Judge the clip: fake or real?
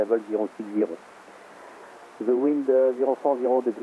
fake